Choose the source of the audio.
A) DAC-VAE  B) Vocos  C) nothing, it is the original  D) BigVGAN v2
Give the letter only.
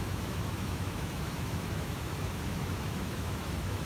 A